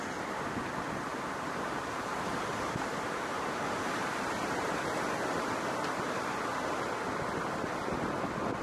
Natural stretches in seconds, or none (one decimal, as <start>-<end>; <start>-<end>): 0.0-1.1; 5.3-8.6